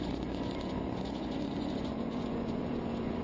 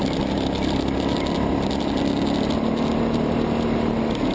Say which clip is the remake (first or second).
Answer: first